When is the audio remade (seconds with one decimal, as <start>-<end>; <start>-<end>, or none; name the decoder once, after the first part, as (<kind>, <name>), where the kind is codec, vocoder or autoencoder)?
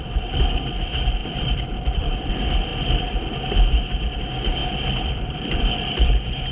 1.2-2.3 (vocoder, BigVGAN v2); 2.7-3.3; 4.6-5.7